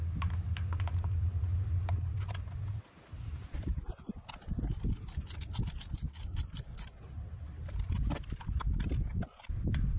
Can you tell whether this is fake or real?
real